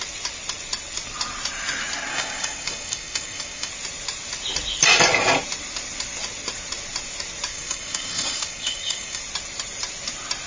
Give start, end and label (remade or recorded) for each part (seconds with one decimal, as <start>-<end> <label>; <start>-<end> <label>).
0.0-2.1 recorded; 2.1-3.7 remade; 3.7-7.5 recorded; 7.5-9.2 remade; 9.2-10.5 recorded